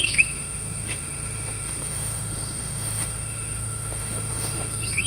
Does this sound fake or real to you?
fake